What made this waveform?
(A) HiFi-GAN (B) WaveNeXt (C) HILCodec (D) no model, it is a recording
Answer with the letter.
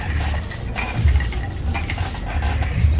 D